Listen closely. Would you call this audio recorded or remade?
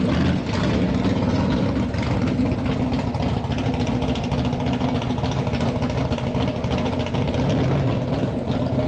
recorded